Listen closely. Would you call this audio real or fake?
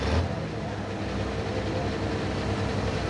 real